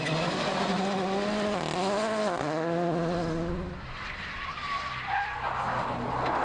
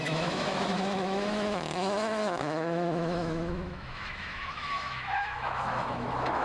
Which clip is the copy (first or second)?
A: second